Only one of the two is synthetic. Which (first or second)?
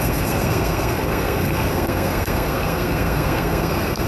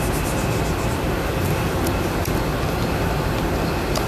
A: first